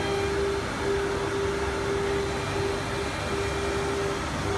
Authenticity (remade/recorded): recorded